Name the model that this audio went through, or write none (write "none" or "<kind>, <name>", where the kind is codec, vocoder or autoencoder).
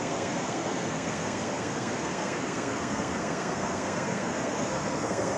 codec, SNAC